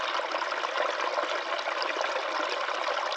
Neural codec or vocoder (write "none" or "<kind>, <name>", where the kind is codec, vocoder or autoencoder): none